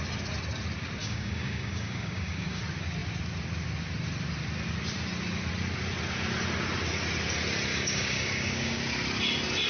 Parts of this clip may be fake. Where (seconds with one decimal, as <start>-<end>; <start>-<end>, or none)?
1.0-2.6; 7.7-8.8